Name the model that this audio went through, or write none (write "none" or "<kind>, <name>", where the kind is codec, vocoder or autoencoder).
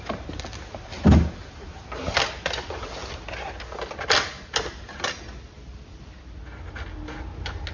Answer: none